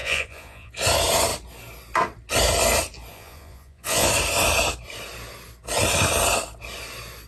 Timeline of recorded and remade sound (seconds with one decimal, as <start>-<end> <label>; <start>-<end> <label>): 0.0-0.7 remade; 0.7-3.1 recorded; 3.1-4.1 remade; 4.1-7.3 recorded

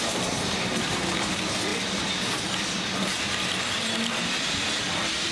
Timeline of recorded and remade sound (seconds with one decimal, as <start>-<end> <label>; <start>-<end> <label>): 0.0-5.3 recorded

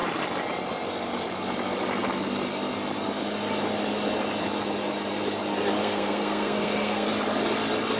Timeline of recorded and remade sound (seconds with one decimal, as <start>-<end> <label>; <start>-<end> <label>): 0.0-5.8 recorded; 5.8-7.1 remade; 7.1-8.0 recorded